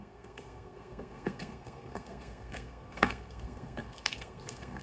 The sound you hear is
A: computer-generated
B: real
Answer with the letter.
A